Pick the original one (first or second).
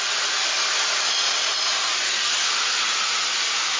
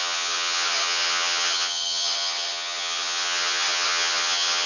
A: first